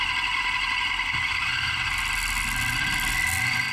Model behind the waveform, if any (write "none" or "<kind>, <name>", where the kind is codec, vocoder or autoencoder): none